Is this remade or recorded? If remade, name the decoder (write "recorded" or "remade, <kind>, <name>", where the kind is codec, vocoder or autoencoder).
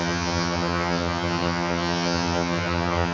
remade, vocoder, HiFi-GAN